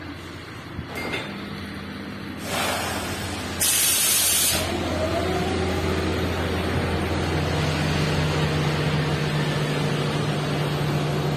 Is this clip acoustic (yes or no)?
yes